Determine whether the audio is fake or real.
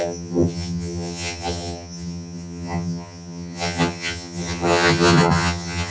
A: fake